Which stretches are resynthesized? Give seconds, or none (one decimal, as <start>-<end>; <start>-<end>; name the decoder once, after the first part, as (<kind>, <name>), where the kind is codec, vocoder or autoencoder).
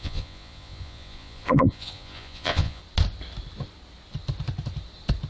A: 0.0-2.8 (vocoder, Vocos)